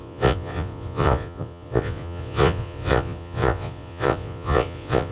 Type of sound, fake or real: fake